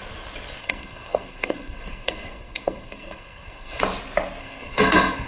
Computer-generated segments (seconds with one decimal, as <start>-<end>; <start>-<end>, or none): 0.6-3.8; 4.4-5.3